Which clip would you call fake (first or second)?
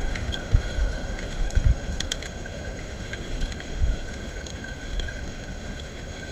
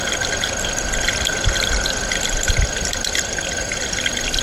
first